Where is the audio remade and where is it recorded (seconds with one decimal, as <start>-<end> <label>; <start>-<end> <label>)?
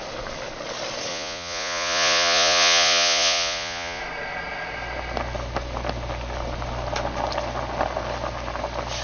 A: 0.0-1.1 recorded; 1.1-4.0 remade; 4.0-9.0 recorded